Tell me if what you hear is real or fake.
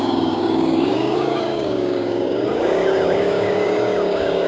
fake